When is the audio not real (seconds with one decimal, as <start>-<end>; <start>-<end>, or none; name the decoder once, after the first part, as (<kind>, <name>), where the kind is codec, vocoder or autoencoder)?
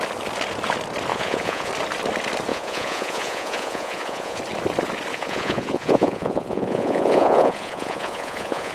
1.1-1.7 (vocoder, Vocos); 2.5-4.4; 5.1-8.7